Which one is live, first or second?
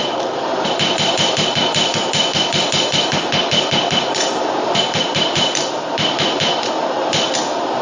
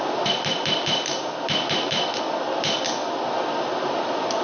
second